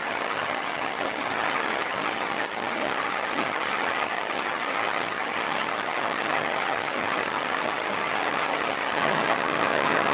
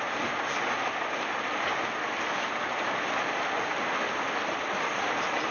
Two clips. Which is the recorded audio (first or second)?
second